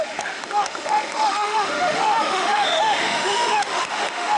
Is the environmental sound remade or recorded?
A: remade